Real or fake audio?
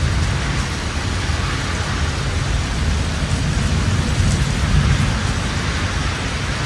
real